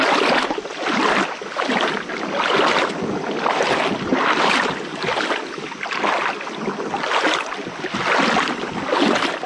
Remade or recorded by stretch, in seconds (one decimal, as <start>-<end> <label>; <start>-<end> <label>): 0.0-9.5 recorded